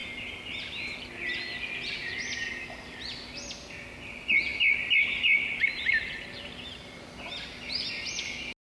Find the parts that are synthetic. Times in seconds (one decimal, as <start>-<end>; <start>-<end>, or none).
none